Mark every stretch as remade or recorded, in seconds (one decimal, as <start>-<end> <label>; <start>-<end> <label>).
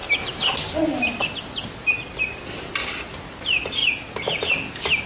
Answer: 0.0-5.1 recorded